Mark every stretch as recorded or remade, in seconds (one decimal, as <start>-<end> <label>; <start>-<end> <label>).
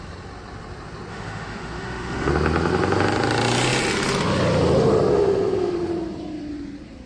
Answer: 0.0-1.1 recorded; 1.1-2.3 remade; 2.3-7.1 recorded